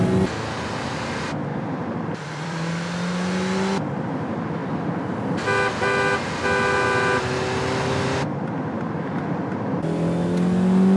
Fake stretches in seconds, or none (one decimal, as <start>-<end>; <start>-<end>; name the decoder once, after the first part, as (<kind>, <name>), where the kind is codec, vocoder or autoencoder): 1.5-2.7 (vocoder, BigVGAN v2)